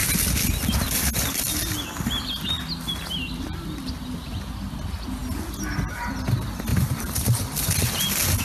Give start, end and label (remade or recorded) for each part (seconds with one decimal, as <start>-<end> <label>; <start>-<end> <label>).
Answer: 0.0-8.4 recorded